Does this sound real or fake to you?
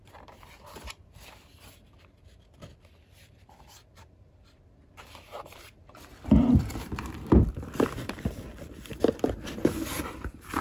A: fake